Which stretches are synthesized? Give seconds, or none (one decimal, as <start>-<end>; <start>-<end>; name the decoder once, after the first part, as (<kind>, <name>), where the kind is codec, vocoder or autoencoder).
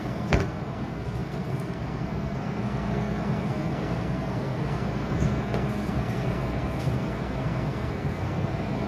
0.0-8.9 (codec, SNAC)